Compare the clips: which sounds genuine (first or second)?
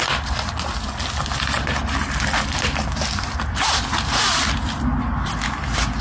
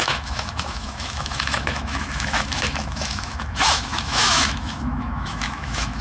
first